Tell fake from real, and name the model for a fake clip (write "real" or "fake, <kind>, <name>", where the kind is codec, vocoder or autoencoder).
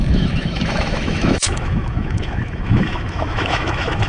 fake, autoencoder, DAC-VAE